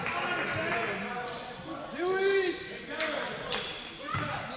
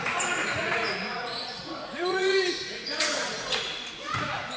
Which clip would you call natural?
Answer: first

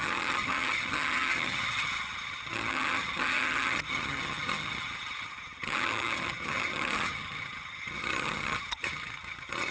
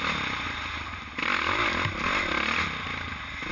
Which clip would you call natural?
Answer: second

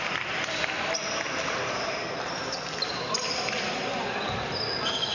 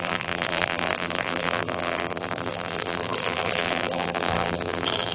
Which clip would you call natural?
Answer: first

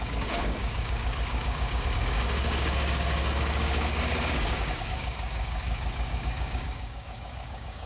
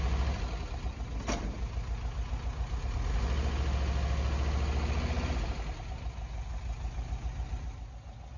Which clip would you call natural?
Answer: second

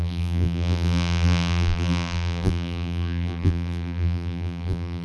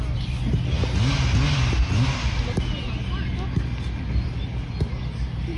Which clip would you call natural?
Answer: second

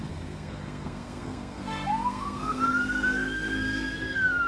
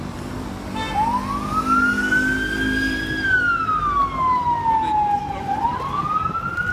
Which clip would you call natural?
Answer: second